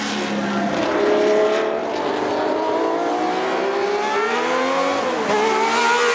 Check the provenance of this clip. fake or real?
real